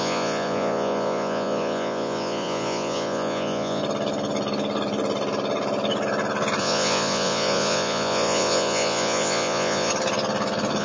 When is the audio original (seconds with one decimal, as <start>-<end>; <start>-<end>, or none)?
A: 3.8-6.6; 9.9-10.8